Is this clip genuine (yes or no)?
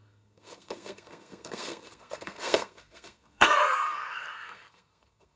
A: no